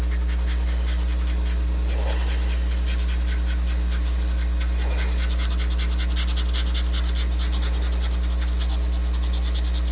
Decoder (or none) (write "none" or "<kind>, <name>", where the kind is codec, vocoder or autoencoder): none